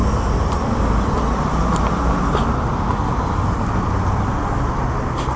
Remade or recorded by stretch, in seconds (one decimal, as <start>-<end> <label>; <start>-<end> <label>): 0.0-5.4 recorded